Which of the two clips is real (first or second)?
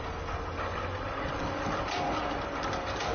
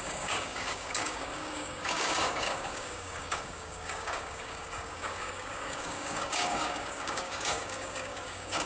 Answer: first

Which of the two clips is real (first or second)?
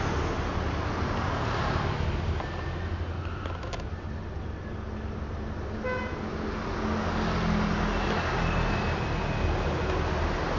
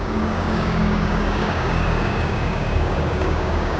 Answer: first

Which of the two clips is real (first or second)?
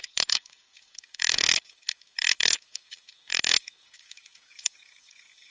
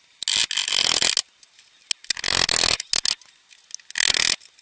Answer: second